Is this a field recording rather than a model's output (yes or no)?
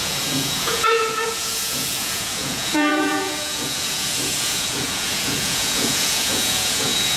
no